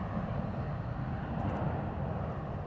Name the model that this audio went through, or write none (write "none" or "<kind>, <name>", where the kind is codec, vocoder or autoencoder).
none